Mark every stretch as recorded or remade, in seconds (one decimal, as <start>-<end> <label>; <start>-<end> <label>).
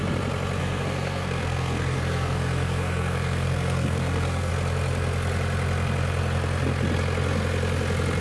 0.0-0.6 recorded; 0.6-4.5 remade; 4.5-8.2 recorded